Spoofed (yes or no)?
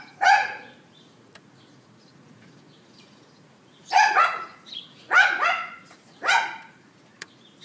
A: yes